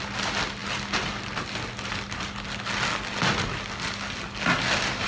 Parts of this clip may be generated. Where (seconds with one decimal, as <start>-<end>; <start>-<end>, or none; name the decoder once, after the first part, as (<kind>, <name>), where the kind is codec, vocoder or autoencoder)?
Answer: none